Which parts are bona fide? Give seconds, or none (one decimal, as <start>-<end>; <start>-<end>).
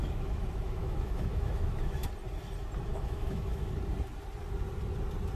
2.1-2.9; 3.7-5.4